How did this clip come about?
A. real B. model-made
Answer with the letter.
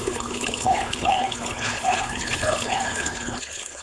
B